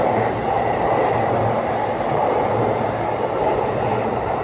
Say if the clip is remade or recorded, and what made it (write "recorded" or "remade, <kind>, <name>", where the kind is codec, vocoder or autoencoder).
remade, vocoder, BigVGAN v2